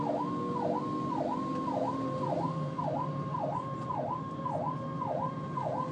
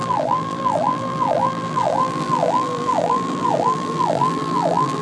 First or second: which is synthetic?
second